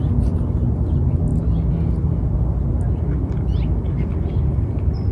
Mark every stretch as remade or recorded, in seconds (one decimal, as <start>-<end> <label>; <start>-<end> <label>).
0.0-5.1 recorded